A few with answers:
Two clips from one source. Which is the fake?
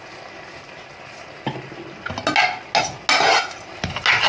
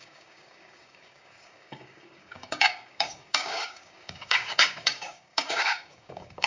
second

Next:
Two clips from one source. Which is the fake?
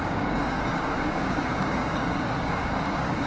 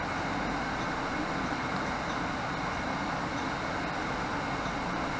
first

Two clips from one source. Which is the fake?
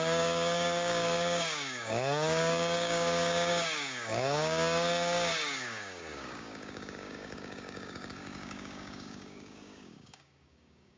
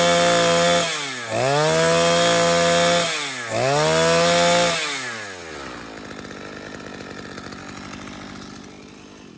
first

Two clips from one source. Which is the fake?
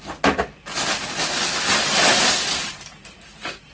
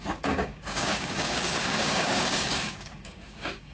second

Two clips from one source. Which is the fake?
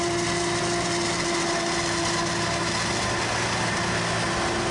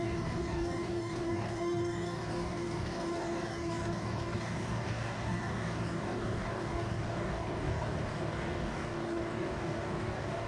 second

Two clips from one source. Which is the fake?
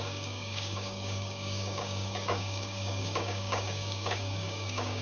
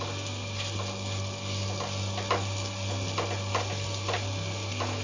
first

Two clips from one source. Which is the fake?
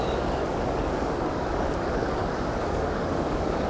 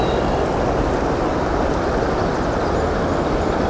first